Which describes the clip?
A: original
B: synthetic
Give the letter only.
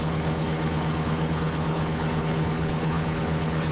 B